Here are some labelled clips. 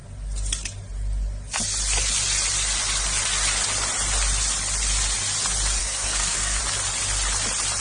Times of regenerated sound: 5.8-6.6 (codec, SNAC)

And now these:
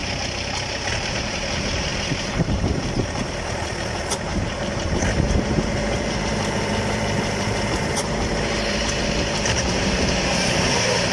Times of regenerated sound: 0.9-11.1 (vocoder, BigVGAN v2)

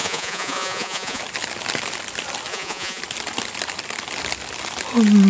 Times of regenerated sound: 0.0-1.2 (vocoder, Vocos); 2.5-3.0

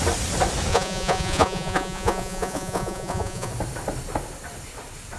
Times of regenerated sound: 0.7-3.5 (vocoder, Vocos)

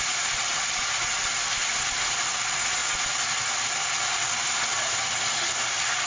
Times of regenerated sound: none

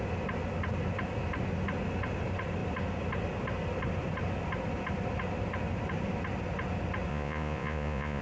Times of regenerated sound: 7.1-8.2 (vocoder, Vocos)

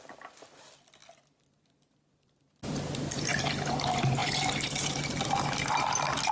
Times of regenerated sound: 1.0-3.4 (vocoder, BigVGAN v2)

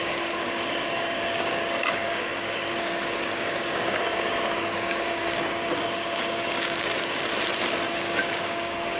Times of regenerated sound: 0.0-7.3 (codec, DAC); 7.9-9.0